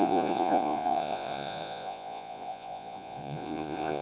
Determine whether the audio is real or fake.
fake